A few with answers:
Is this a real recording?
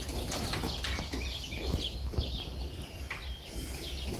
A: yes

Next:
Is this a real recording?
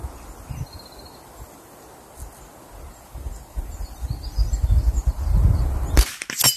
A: yes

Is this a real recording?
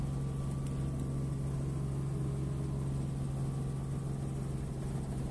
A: yes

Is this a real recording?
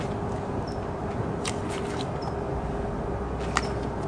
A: yes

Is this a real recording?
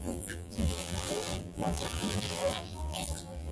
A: no